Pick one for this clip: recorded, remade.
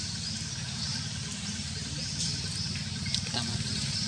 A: recorded